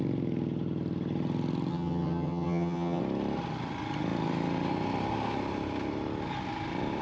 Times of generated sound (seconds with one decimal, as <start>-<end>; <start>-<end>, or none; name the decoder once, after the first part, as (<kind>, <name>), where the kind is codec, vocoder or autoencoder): 1.7-3.0 (vocoder, HiFi-GAN)